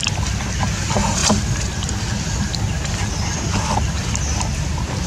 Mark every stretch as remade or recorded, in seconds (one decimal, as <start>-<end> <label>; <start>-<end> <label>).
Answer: 0.0-5.1 recorded